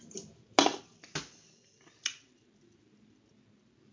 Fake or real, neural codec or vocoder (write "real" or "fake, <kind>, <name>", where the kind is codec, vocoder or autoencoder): real